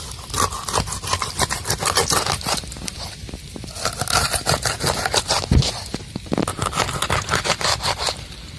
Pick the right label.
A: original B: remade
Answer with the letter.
A